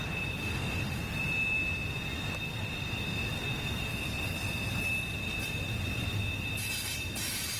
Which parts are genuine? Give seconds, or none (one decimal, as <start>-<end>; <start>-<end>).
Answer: 0.0-0.4; 1.0-7.6